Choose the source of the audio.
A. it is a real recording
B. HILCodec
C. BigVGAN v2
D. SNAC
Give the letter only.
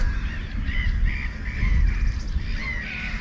A